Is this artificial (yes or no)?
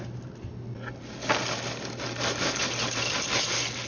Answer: no